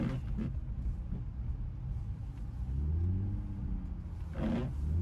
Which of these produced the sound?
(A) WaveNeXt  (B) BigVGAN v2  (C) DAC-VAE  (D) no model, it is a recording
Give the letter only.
D